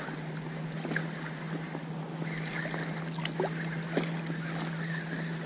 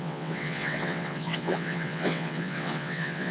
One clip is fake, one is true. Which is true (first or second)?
first